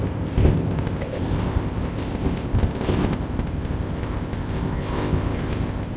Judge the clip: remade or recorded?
remade